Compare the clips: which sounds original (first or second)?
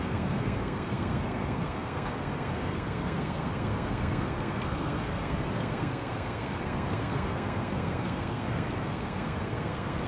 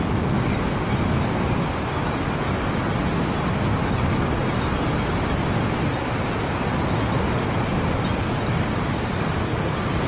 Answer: second